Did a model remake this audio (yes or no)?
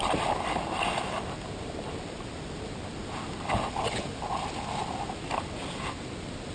no